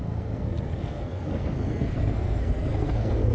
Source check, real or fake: fake